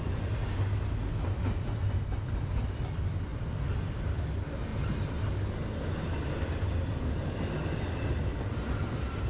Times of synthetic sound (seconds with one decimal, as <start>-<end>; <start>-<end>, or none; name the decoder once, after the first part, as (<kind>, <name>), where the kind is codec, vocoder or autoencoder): 3.3-4.0 (vocoder, BigVGAN v2); 4.7-5.3